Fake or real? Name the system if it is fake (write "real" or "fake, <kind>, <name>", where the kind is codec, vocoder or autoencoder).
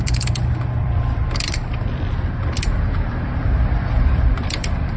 fake, vocoder, BigVGAN v2